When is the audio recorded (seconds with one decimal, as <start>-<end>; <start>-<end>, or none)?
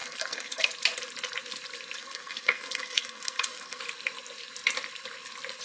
0.7-2.0; 3.8-5.6